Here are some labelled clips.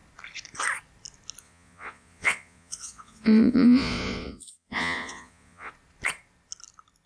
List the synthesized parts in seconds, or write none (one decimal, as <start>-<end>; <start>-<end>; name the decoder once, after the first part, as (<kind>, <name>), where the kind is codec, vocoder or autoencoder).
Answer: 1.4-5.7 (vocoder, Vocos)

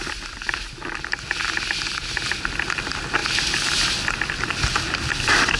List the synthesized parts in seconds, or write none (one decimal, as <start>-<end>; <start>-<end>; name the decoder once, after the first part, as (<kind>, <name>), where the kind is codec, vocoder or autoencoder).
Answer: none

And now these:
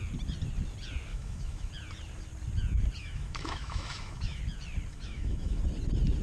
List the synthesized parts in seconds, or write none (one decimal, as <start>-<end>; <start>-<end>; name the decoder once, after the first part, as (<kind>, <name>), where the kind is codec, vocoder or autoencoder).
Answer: 1.1-1.7 (autoencoder, DAC-VAE); 3.0-4.4; 4.9-5.6

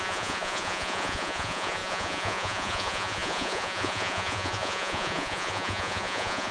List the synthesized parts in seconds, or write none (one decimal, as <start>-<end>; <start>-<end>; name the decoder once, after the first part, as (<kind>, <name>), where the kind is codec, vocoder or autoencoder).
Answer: 0.0-6.5 (vocoder, Vocos)